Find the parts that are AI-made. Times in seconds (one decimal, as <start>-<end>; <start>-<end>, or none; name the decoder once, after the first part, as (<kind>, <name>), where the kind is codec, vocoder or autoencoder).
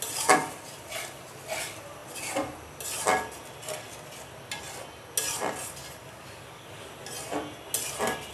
6.0-6.9 (codec, DAC)